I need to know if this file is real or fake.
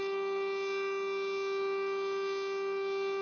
real